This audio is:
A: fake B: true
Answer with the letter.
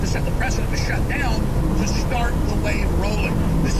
B